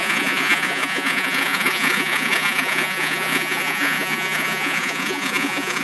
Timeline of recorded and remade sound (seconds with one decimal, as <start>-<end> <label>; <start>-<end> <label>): 0.0-5.8 remade